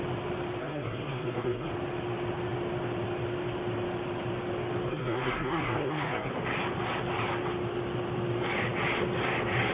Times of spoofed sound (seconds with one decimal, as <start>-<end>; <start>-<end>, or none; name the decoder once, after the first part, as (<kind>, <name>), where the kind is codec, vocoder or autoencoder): 0.6-1.7 (codec, SNAC); 4.9-6.3